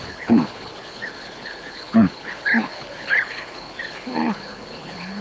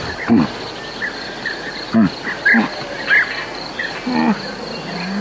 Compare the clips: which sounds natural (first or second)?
second